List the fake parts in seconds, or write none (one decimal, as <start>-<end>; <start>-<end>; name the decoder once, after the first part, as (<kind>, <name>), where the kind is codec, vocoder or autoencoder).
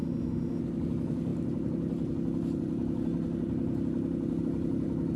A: 0.0-0.6 (autoencoder, DAC-VAE)